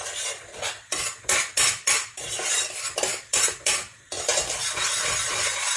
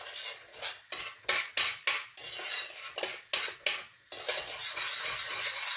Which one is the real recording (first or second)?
second